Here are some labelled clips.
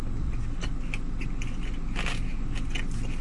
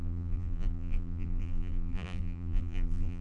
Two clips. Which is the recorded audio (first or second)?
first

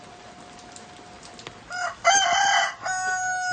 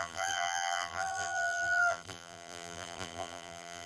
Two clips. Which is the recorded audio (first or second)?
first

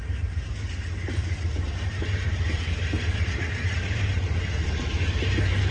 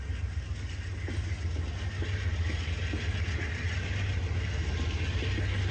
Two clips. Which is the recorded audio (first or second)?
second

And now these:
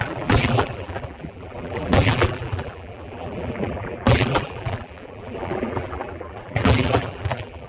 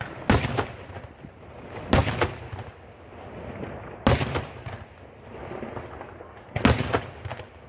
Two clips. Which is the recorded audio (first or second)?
second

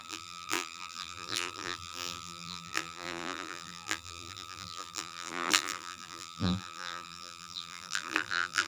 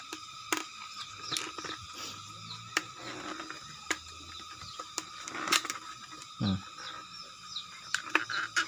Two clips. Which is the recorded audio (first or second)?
second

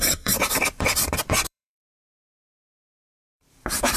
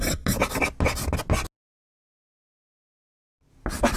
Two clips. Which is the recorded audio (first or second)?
second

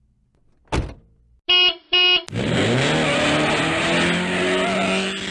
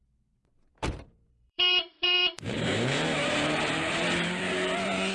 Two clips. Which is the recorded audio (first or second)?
first